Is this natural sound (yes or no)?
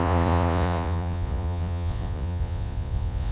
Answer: no